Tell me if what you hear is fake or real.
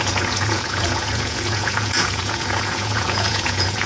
fake